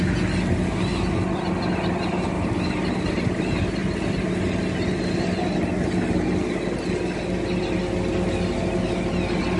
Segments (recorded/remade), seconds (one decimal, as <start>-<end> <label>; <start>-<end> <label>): 0.0-9.6 recorded

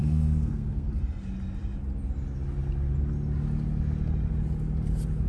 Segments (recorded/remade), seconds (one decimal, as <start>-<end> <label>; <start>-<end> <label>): 0.0-0.9 remade; 0.9-5.3 recorded

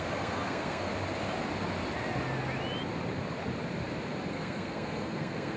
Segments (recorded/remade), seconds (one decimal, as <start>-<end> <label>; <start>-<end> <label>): 0.0-0.9 remade; 0.9-4.3 recorded; 4.3-5.6 remade

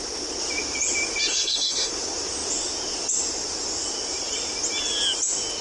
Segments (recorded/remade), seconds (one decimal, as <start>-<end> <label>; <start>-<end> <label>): 0.0-1.3 recorded; 1.3-1.9 remade; 1.9-5.6 recorded